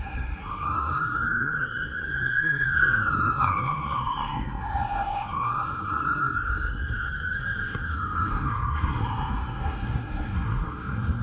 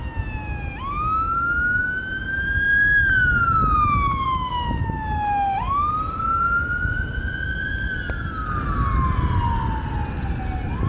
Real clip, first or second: second